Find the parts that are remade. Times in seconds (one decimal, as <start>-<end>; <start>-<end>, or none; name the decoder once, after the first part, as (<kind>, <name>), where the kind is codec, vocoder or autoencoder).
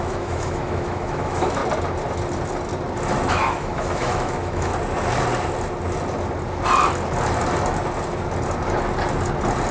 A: 0.0-1.6 (autoencoder, DAC-VAE); 3.3-4.7